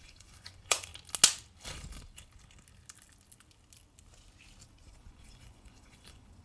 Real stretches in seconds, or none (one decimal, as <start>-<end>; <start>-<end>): 0.9-4.7